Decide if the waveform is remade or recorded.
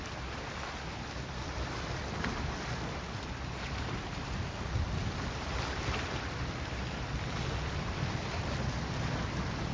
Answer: recorded